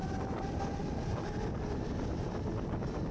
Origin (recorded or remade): recorded